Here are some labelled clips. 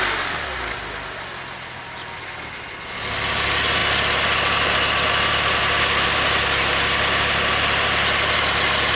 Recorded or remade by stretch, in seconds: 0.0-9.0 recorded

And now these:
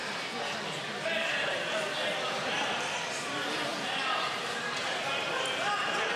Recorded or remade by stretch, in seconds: 0.0-6.2 recorded

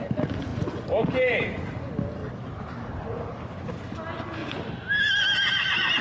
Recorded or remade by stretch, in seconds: 0.0-0.5 recorded; 0.5-1.8 remade; 1.8-2.2 recorded; 2.2-3.6 remade; 3.6-4.4 recorded; 4.4-5.0 remade; 5.0-6.0 recorded

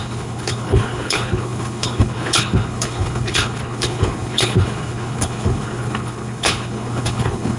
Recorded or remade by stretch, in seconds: 0.0-7.6 remade

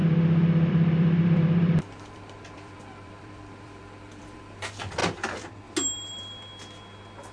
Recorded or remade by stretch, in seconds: 0.0-4.4 remade; 4.4-7.3 recorded

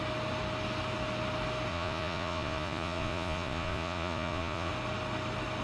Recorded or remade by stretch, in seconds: 0.0-1.7 recorded; 1.7-4.7 remade; 4.7-5.6 recorded

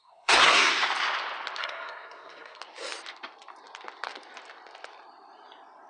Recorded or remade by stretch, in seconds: 0.0-0.7 remade; 0.7-1.6 recorded; 1.6-2.6 remade; 2.6-5.9 recorded

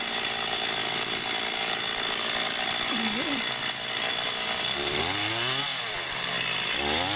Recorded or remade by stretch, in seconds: 0.0-0.8 recorded; 0.8-5.0 remade; 5.0-5.7 recorded; 5.7-6.3 remade; 6.3-7.2 recorded